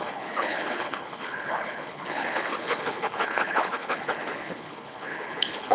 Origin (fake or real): fake